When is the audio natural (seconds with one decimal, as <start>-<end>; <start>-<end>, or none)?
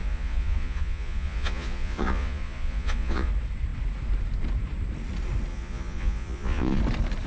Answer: 3.3-5.5; 6.8-7.3